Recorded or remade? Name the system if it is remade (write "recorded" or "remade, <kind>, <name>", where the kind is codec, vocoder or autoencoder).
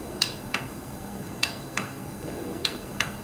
remade, codec, SNAC